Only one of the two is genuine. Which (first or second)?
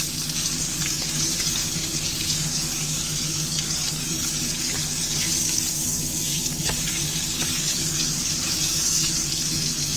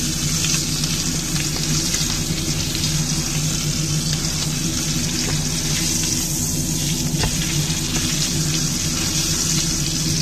second